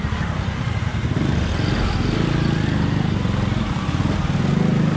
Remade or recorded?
recorded